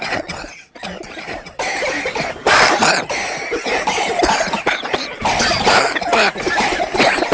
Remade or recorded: recorded